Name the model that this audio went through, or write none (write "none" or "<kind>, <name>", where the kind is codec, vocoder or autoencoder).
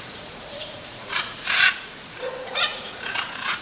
vocoder, Vocos